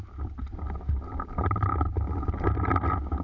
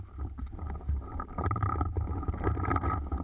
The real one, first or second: first